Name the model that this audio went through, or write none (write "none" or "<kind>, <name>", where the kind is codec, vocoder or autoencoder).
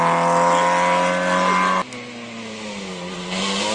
none